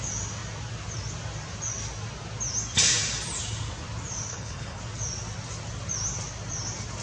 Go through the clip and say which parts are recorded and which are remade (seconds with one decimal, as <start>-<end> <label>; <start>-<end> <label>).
0.0-4.3 recorded; 4.3-4.8 remade; 4.8-7.0 recorded